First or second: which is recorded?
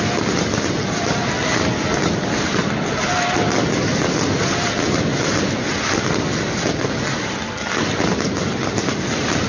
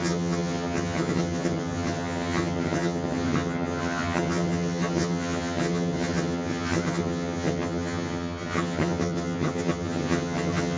first